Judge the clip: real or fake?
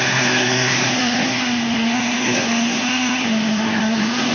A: fake